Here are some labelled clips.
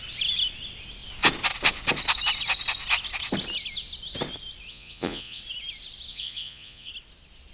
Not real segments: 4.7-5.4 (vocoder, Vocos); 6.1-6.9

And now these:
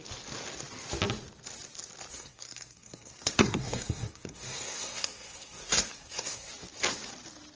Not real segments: 2.1-6.5 (codec, SNAC)

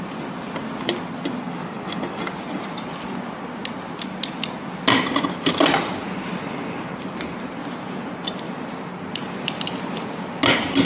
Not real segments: 1.6-2.2 (codec, DAC)

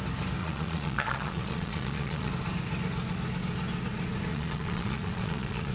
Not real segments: 0.4-2.3 (vocoder, Vocos); 4.3-5.7

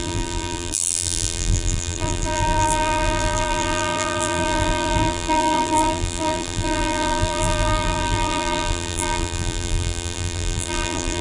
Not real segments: 0.0-11.2 (vocoder, BigVGAN v2)

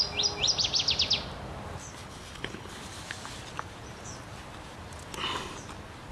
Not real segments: 2.0-2.7 (codec, HILCodec)

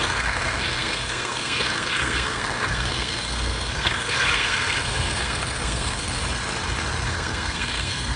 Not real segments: 0.0-6.2 (codec, SNAC); 7.1-8.2